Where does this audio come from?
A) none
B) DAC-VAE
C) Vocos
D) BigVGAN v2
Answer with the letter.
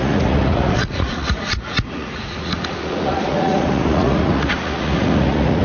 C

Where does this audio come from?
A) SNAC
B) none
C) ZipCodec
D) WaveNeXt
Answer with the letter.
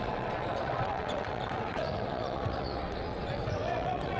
D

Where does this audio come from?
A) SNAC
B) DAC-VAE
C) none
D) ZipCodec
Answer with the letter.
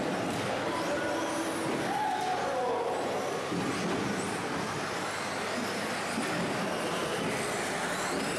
C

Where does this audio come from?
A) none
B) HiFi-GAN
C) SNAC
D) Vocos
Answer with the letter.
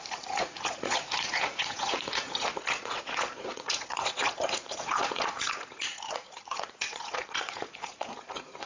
D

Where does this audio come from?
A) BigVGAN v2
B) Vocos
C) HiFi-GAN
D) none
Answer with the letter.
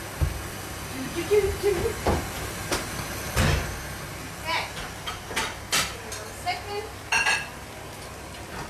D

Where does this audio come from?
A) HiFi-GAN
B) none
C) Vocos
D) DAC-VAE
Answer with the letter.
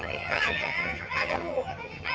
A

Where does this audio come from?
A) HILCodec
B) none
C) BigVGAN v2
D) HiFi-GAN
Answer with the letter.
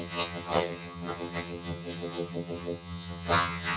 D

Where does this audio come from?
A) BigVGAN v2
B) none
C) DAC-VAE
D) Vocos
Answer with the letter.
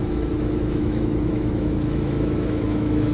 C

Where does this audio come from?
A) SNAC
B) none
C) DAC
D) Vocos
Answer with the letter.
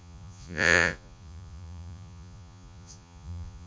D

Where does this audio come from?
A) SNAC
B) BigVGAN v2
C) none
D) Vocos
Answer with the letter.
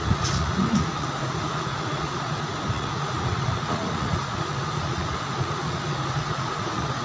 D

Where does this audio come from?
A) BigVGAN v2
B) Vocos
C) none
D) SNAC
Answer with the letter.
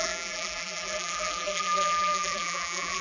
A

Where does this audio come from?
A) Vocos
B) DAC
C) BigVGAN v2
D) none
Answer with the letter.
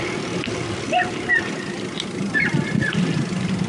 D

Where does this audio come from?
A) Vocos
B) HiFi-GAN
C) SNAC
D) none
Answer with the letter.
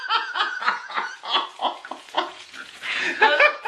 A